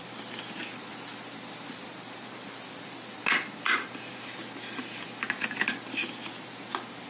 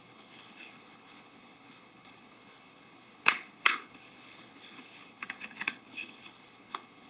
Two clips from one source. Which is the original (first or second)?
first